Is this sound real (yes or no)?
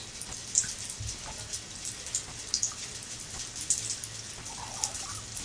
yes